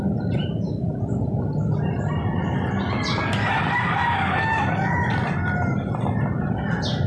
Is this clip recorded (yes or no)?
yes